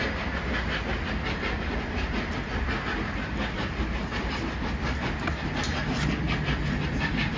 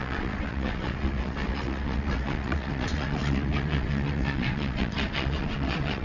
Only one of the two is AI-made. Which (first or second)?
second